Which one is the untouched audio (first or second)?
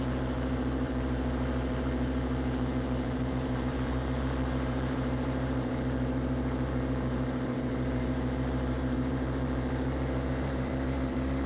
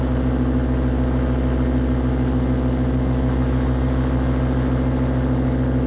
second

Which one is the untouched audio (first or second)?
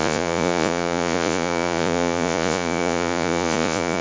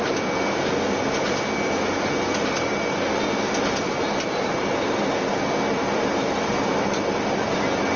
second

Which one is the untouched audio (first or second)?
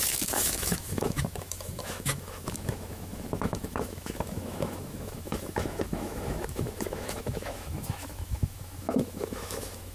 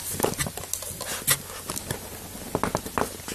second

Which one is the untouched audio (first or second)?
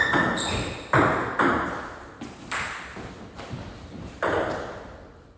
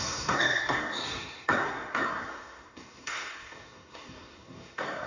first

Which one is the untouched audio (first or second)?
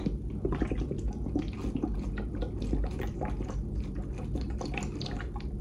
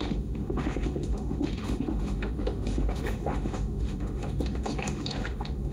first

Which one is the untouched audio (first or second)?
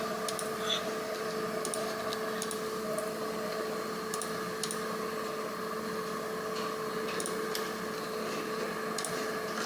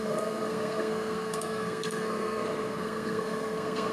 first